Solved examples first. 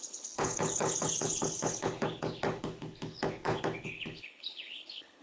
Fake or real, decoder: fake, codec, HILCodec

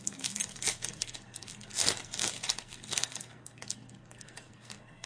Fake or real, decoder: fake, codec, SNAC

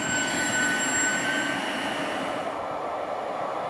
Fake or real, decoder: real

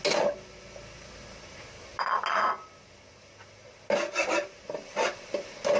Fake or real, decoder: real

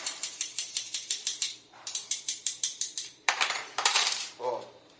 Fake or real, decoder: fake, vocoder, BigVGAN v2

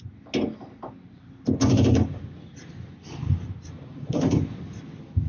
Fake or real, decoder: real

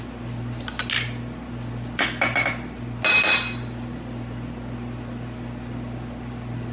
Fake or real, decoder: real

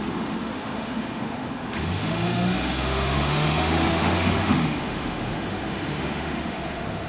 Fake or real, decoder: fake, autoencoder, DAC-VAE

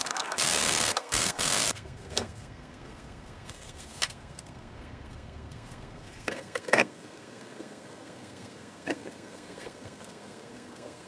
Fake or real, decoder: fake, codec, SNAC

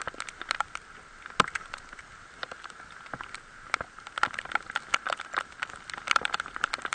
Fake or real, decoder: real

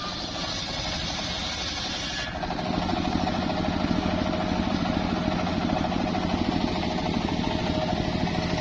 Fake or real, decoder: real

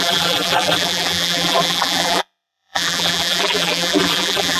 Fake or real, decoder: fake, vocoder, BigVGAN v2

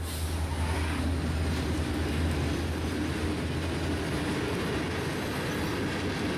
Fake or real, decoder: real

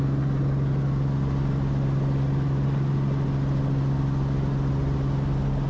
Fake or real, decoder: real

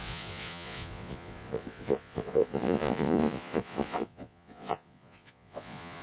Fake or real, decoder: fake, vocoder, Vocos